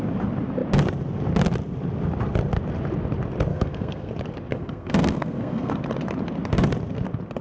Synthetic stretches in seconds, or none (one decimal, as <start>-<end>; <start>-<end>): 3.5-4.1; 4.5-5.7